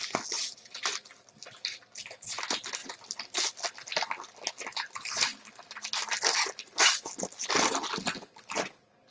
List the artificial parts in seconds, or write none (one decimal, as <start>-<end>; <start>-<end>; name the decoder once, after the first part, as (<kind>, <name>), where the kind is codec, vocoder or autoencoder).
none